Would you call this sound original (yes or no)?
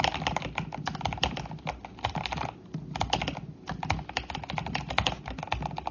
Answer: yes